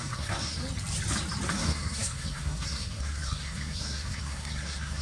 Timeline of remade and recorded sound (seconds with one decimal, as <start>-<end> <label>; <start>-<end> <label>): 0.0-0.6 remade; 0.6-1.5 recorded; 1.5-5.0 remade